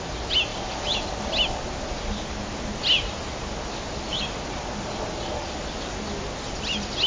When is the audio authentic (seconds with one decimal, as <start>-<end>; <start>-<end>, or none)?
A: 0.0-7.1